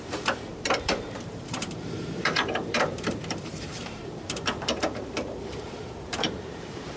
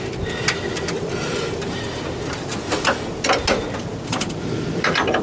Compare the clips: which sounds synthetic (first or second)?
first